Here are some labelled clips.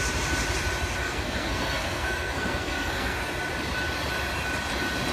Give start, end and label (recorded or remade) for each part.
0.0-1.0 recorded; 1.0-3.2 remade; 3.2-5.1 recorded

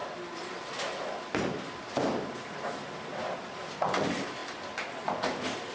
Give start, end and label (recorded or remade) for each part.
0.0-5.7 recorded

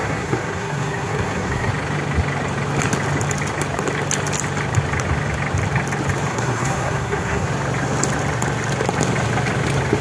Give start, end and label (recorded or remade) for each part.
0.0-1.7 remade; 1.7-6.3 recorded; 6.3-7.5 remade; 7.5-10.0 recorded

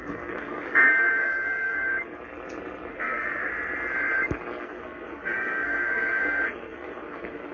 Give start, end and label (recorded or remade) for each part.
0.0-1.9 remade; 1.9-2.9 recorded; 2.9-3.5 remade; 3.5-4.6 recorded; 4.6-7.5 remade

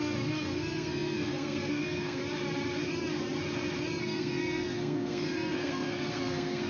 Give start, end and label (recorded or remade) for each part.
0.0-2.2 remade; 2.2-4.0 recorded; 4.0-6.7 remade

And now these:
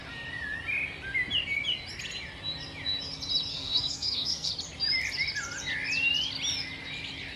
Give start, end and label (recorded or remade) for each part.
0.0-3.5 recorded; 3.5-4.5 remade; 4.5-7.4 recorded